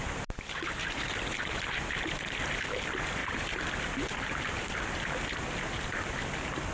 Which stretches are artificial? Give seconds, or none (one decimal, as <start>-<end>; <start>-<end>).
0.0-1.1